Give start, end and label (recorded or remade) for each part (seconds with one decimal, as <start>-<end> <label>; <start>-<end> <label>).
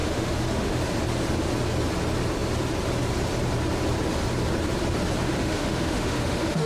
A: 0.0-0.8 remade; 0.8-5.4 recorded; 5.4-6.7 remade